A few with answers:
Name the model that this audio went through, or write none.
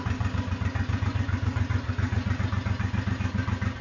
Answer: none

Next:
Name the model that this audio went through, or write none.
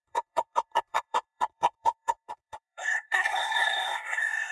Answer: codec, SNAC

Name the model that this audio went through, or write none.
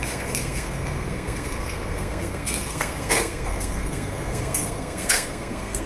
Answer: codec, SNAC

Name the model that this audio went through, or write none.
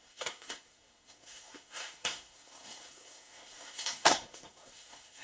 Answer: codec, SNAC